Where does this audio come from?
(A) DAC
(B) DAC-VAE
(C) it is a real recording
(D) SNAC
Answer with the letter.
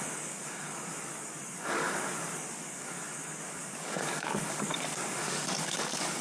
A